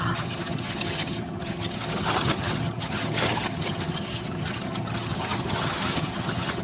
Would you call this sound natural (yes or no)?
no